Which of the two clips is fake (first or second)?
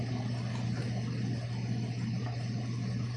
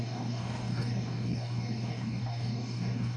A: second